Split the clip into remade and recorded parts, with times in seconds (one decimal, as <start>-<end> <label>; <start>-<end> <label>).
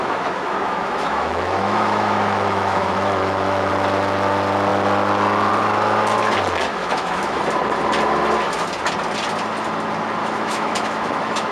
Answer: 0.0-3.7 remade; 3.7-6.8 recorded; 6.8-7.4 remade; 7.4-10.2 recorded; 10.2-11.5 remade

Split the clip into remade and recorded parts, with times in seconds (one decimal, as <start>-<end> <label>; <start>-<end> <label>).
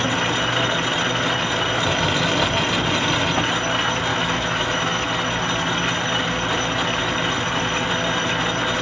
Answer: 0.0-4.1 recorded; 4.1-5.0 remade; 5.0-8.8 recorded